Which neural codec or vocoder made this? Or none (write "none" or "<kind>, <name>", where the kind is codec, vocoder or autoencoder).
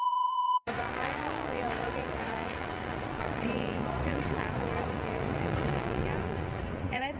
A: vocoder, Vocos